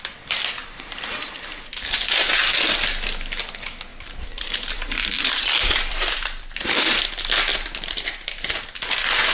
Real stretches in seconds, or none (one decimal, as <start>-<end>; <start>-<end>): 0.0-0.6; 2.3-3.9; 6.8-7.5; 8.6-9.3